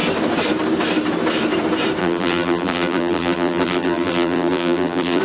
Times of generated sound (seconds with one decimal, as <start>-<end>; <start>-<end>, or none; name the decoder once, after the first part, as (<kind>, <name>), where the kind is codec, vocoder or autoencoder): 2.0-5.2 (vocoder, BigVGAN v2)